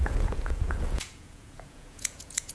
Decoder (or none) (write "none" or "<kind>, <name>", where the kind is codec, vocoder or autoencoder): vocoder, Vocos